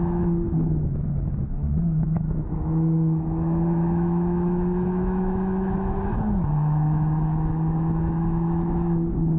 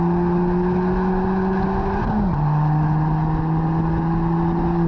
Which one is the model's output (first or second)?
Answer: first